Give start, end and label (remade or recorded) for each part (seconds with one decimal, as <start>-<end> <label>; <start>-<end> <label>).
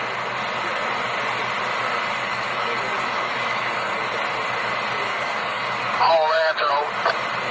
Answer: 0.0-2.2 recorded; 2.2-4.1 remade; 4.1-5.1 recorded; 5.1-6.7 remade; 6.7-7.5 recorded